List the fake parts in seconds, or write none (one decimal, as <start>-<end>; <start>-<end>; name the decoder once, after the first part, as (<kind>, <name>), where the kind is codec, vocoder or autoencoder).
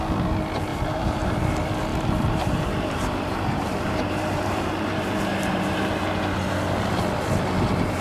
0.7-1.4 (vocoder, BigVGAN v2); 1.9-5.9